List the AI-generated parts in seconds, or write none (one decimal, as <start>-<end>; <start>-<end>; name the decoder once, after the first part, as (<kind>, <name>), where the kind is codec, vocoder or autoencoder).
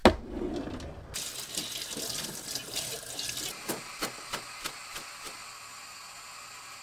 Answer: none